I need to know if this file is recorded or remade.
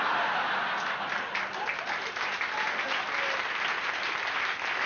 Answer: recorded